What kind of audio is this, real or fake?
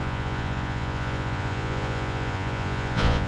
fake